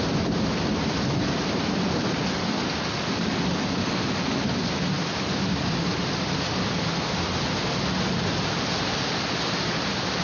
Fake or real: real